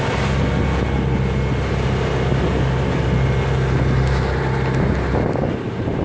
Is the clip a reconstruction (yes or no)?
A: no